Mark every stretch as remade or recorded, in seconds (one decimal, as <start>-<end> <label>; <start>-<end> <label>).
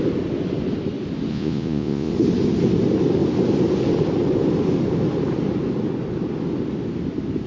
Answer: 0.0-1.3 recorded; 1.3-2.1 remade; 2.1-7.5 recorded